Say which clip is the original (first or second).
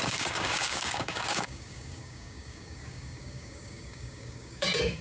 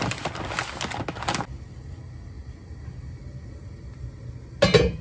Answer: second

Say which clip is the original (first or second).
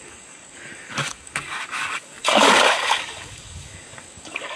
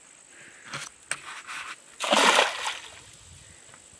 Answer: second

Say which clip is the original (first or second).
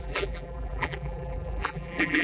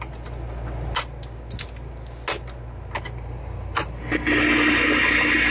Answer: second